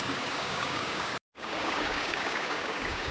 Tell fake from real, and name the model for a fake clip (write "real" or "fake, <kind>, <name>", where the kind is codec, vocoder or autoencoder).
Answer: fake, codec, DAC